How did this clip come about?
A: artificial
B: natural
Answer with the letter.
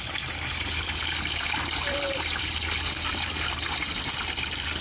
B